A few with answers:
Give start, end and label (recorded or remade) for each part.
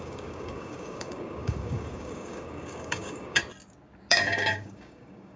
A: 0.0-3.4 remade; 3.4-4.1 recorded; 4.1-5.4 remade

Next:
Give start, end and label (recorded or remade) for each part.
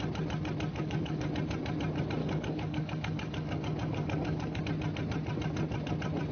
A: 0.0-0.7 recorded; 0.7-1.3 remade; 1.3-2.2 recorded; 2.2-4.6 remade; 4.6-6.3 recorded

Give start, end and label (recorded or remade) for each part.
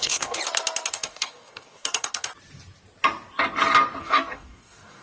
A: 0.0-0.4 remade; 0.4-0.9 recorded; 0.9-2.3 remade; 2.3-4.0 recorded; 4.0-5.0 remade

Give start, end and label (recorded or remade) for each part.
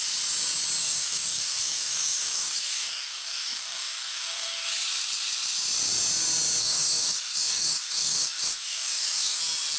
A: 0.0-0.8 recorded; 0.8-4.7 remade; 4.7-6.6 recorded; 6.6-9.4 remade; 9.4-9.8 recorded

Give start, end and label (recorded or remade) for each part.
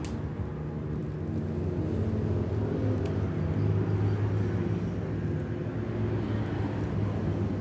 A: 0.0-7.6 recorded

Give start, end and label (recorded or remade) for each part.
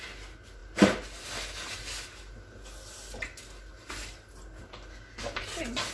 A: 0.0-5.9 recorded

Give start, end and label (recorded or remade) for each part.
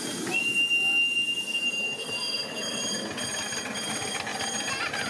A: 0.0-0.4 recorded; 0.4-2.8 remade; 2.8-5.1 recorded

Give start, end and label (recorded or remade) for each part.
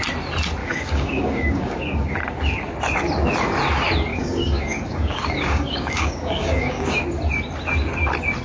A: 0.0-0.6 recorded; 0.6-2.2 remade; 2.2-4.1 recorded; 4.1-7.0 remade; 7.0-8.4 recorded